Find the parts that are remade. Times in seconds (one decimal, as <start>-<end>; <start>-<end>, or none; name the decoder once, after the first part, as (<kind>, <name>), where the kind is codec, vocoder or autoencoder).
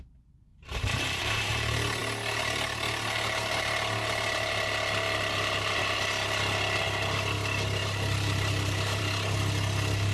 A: 0.5-1.5 (vocoder, BigVGAN v2); 7.8-9.0